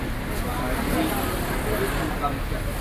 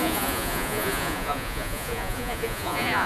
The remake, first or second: second